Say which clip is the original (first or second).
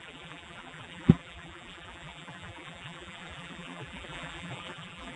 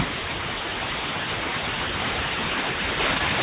second